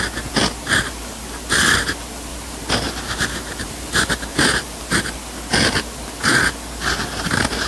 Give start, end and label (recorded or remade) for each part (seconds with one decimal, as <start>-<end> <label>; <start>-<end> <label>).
0.0-2.3 recorded; 2.3-4.8 remade; 4.8-7.7 recorded